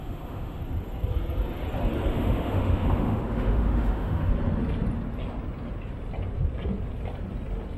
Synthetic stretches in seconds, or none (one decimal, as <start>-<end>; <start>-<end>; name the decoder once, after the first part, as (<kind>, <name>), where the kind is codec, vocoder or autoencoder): 0.0-0.6 (autoencoder, DAC-VAE); 2.1-4.3